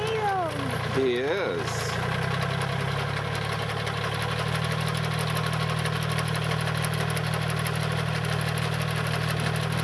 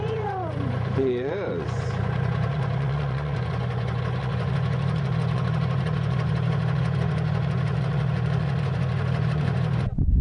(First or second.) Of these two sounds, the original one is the first